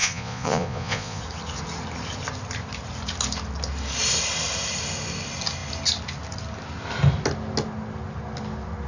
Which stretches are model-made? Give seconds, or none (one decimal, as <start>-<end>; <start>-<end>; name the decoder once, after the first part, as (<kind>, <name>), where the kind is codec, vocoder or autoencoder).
0.0-1.2 (vocoder, Vocos)